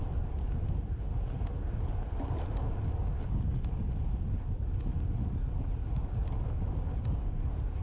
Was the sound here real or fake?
real